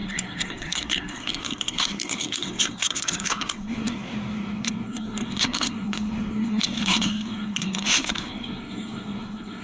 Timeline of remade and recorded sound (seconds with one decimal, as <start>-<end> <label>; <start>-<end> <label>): 0.0-9.6 remade